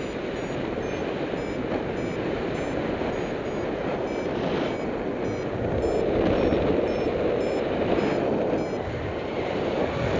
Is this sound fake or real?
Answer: real